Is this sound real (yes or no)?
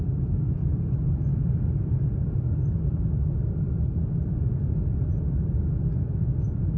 no